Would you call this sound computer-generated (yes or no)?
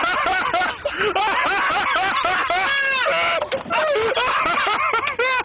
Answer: no